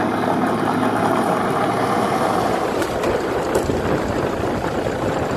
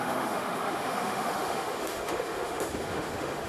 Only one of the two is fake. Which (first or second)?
second